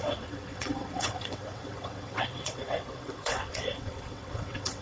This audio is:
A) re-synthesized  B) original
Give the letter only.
A